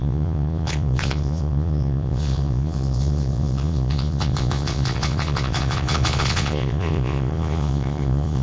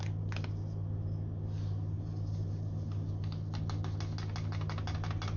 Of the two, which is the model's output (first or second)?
first